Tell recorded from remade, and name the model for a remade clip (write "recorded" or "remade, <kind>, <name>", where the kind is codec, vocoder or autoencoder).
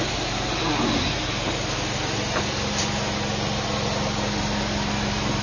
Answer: recorded